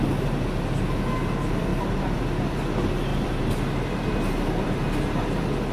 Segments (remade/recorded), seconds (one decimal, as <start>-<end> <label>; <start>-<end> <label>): 0.0-1.7 recorded; 1.7-2.2 remade; 2.2-3.1 recorded; 3.1-5.0 remade; 5.0-5.7 recorded